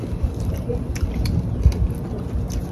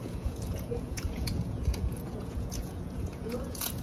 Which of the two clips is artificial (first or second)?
second